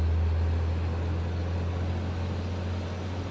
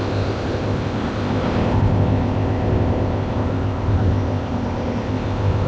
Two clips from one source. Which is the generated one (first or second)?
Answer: second